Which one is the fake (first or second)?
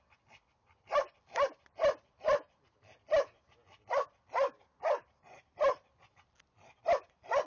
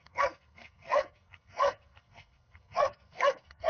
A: second